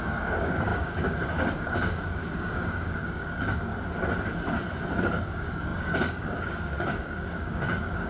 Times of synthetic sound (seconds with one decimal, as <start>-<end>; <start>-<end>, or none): 0.0-3.7; 5.0-8.1